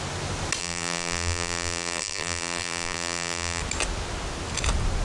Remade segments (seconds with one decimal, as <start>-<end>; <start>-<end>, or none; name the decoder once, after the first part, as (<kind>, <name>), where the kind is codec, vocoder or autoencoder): 0.6-3.6 (vocoder, BigVGAN v2)